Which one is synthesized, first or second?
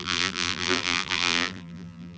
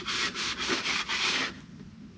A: first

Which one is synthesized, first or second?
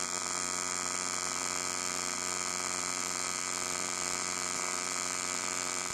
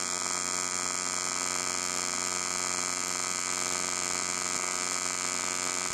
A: first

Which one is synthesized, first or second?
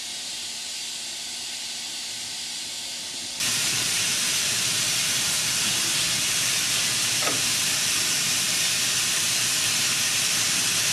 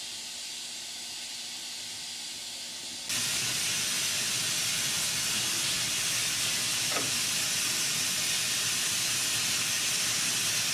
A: first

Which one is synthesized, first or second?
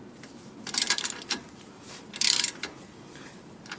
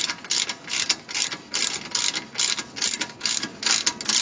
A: first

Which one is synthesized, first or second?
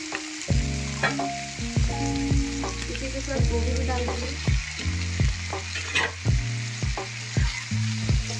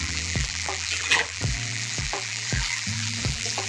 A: second